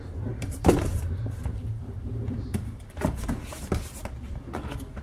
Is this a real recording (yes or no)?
no